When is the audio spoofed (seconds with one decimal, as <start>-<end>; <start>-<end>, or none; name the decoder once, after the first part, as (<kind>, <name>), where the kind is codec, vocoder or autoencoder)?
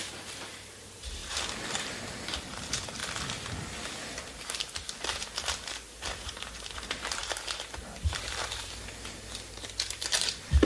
0.0-1.2 (vocoder, BigVGAN v2); 1.8-3.0; 5.7-7.2; 7.8-10.6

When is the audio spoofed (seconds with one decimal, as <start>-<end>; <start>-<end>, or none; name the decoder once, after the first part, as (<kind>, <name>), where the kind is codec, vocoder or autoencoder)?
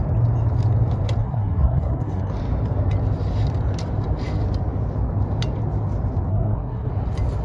1.2-2.3 (codec, SNAC); 6.3-6.9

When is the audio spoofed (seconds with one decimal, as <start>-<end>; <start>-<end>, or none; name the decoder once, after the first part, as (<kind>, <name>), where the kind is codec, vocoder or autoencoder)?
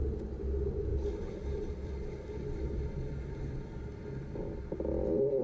0.9-1.7 (vocoder, BigVGAN v2)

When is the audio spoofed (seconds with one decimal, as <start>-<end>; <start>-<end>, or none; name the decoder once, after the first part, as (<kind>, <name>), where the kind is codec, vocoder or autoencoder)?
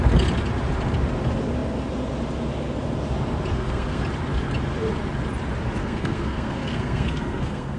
3.5-4.0 (codec, SNAC); 5.8-7.8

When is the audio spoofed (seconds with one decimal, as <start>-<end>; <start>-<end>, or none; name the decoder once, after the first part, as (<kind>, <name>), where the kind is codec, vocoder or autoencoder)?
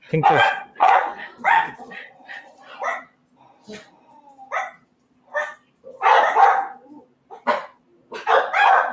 0.0-3.2 (vocoder, Vocos); 8.4-8.9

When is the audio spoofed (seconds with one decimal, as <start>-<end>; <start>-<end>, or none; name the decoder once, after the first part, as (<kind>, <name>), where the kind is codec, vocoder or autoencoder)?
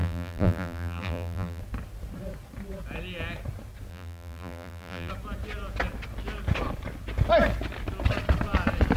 0.0-1.6 (vocoder, BigVGAN v2); 3.9-5.1